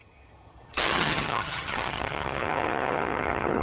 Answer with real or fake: fake